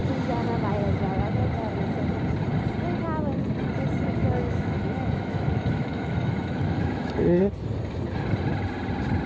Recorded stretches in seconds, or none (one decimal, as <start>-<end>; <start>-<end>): 0.0-4.2; 7.4-9.3